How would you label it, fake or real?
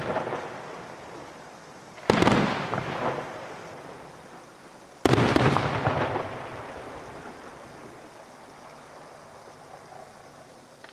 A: real